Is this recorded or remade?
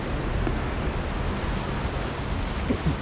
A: recorded